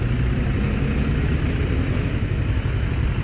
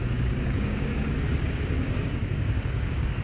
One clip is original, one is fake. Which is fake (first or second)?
second